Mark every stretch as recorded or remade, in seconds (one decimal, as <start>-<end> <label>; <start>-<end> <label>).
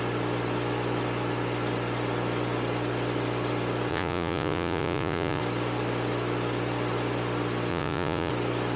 0.0-3.9 recorded; 3.9-5.4 remade; 5.4-7.7 recorded; 7.7-8.3 remade; 8.3-8.8 recorded